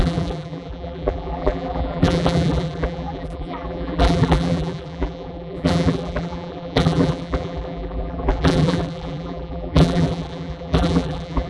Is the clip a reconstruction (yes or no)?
yes